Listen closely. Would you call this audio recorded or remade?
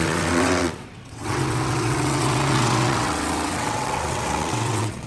remade